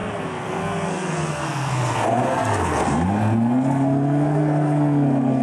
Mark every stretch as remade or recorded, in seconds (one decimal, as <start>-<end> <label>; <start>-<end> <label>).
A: 0.0-5.4 remade